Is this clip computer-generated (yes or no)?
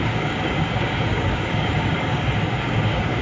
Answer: yes